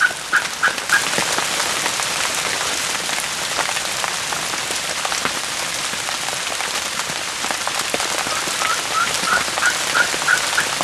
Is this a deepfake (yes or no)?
no